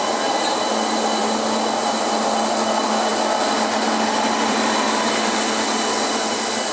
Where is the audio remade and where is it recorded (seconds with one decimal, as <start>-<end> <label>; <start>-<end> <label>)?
0.0-6.7 recorded